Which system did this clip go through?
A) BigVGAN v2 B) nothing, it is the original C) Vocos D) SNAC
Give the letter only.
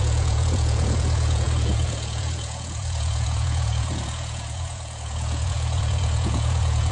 C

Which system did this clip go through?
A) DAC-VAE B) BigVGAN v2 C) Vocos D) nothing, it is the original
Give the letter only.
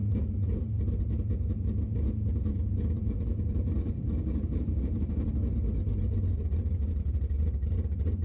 B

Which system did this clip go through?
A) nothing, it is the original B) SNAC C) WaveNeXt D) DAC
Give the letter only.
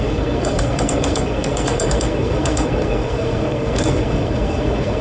B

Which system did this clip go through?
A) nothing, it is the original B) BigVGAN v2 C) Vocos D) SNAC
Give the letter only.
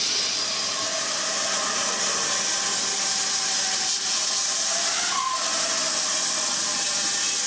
A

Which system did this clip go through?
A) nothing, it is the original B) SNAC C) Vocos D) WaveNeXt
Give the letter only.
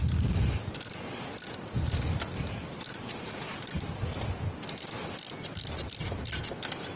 A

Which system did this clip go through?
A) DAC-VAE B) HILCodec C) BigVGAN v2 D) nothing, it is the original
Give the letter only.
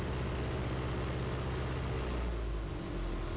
D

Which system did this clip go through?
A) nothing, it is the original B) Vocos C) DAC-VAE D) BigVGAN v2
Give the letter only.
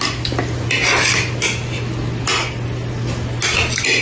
A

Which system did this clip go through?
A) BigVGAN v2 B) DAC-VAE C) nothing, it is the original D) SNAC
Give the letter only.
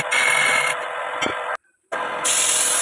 C